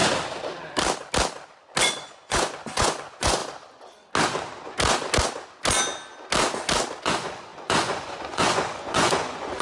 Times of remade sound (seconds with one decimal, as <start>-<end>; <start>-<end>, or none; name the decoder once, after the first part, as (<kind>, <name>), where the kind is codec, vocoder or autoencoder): 1.8-3.4 (vocoder, Vocos); 7.0-9.6